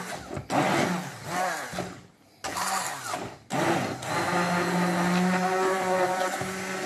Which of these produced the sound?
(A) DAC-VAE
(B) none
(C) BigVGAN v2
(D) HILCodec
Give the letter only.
B